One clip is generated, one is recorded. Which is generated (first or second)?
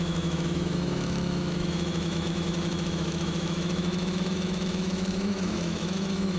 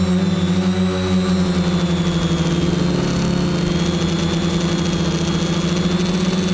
first